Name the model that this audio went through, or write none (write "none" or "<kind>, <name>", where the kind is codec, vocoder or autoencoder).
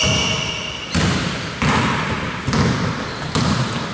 none